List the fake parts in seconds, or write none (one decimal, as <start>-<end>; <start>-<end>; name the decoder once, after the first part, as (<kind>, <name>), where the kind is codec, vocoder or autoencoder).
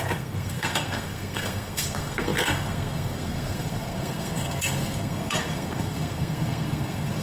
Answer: 0.0-7.2 (codec, SNAC)